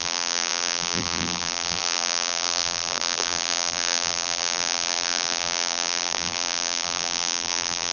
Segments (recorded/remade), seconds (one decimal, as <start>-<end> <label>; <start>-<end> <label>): 0.0-7.9 remade